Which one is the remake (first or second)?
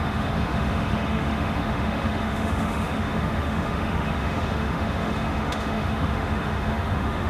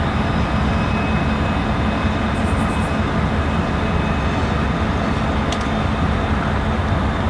first